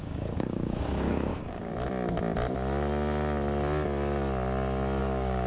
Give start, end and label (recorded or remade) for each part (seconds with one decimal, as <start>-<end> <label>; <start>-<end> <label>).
0.0-1.7 remade; 1.7-5.0 recorded; 5.0-5.5 remade